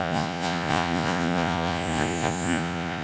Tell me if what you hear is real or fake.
fake